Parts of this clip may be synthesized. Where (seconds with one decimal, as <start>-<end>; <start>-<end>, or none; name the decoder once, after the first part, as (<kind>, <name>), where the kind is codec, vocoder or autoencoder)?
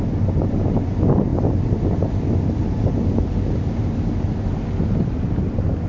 none